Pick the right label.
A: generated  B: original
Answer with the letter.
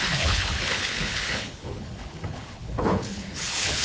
A